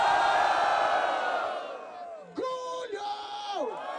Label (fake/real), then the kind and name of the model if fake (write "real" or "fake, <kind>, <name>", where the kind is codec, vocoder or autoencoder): real